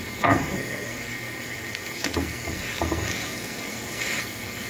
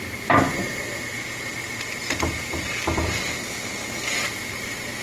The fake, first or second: first